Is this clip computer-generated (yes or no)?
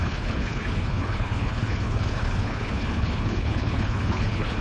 yes